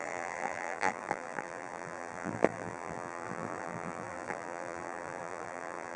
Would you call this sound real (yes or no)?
no